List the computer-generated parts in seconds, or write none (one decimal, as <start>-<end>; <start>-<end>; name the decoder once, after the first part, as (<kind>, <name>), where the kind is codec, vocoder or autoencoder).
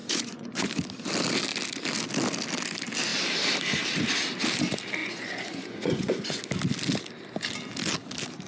0.0-0.7 (vocoder, Vocos); 5.0-6.4